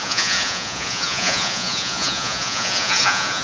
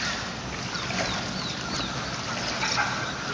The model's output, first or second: first